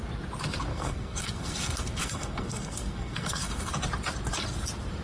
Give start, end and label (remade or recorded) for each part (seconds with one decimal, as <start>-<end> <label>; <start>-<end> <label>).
0.0-0.7 recorded; 0.7-3.7 remade; 3.7-5.0 recorded